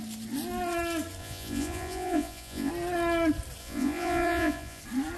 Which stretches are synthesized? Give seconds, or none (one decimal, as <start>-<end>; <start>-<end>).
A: 1.2-2.7; 3.6-4.8